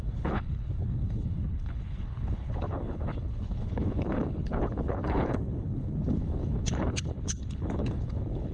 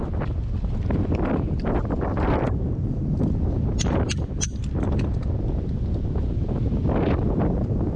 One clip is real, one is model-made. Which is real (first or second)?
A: second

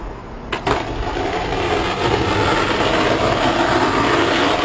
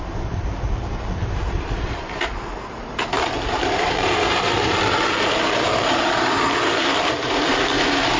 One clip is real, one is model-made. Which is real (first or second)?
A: first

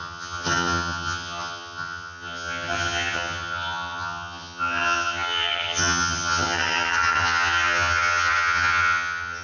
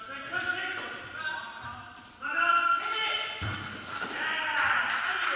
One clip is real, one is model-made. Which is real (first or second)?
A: second